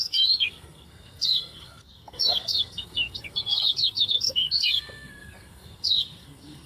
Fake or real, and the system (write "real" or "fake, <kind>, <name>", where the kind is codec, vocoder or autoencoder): fake, codec, SNAC